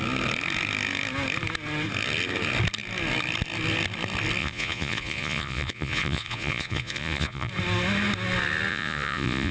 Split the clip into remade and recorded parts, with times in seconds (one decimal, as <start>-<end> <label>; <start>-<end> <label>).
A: 0.0-4.4 recorded; 4.4-7.5 remade; 7.5-8.7 recorded; 8.7-9.5 remade